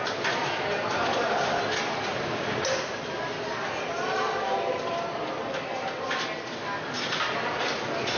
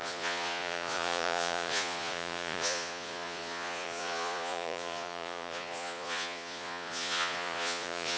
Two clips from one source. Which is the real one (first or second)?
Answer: first